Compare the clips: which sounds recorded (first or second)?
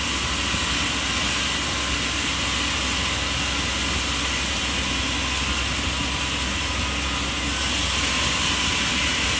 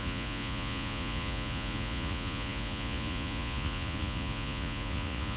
first